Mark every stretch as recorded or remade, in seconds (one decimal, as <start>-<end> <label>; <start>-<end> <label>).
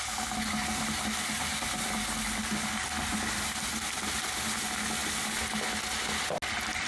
0.0-6.9 recorded